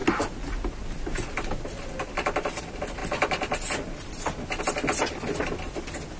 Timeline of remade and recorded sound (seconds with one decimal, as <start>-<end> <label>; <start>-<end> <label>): 0.0-6.2 recorded